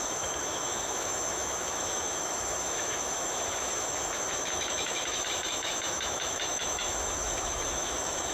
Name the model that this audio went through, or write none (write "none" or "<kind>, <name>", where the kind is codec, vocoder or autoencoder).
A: autoencoder, DAC-VAE